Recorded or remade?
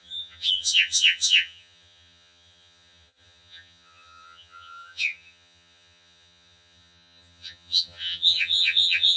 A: remade